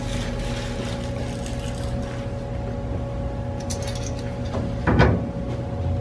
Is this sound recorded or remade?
recorded